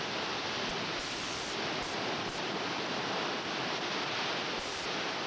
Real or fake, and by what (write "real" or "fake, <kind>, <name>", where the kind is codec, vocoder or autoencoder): real